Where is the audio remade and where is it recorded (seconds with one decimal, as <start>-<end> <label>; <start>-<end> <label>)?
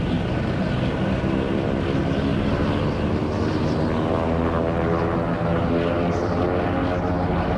0.0-7.6 recorded